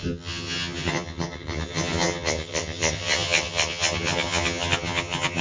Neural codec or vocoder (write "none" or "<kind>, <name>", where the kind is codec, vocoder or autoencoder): vocoder, HiFi-GAN